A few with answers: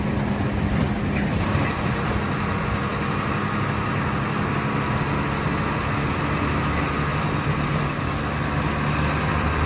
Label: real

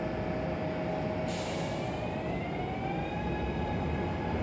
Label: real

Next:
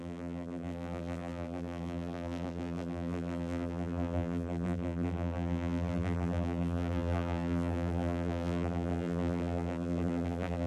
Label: fake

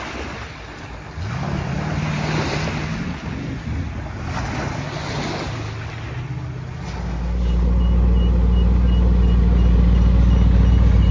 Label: real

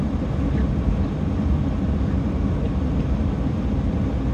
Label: real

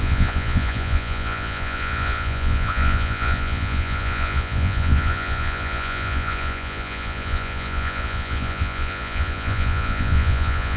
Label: fake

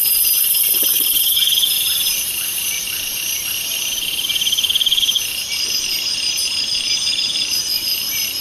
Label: fake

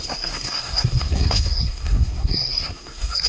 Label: fake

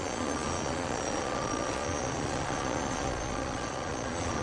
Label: fake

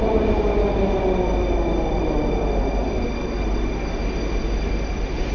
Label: real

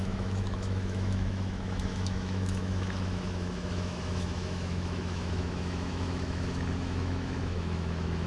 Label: fake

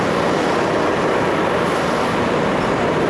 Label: real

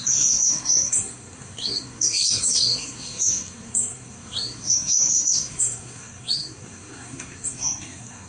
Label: fake